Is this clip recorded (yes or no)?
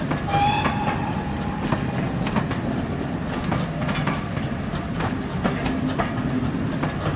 yes